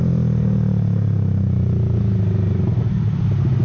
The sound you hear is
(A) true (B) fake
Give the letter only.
A